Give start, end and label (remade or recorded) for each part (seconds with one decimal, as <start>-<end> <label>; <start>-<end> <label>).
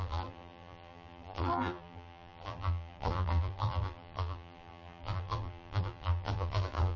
0.0-7.0 remade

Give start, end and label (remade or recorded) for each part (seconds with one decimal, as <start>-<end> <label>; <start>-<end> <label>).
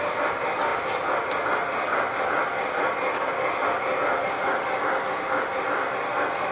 0.0-6.5 recorded